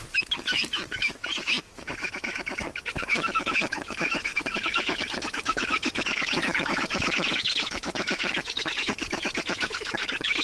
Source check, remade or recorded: remade